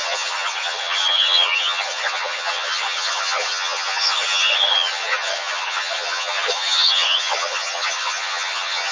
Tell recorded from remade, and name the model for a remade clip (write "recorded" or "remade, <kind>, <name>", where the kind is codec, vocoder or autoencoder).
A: remade, vocoder, HiFi-GAN